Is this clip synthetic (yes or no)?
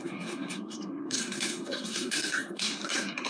yes